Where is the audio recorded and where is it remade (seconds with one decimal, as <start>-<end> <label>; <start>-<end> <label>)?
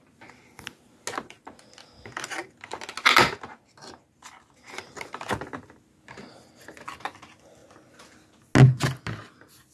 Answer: 0.0-9.7 recorded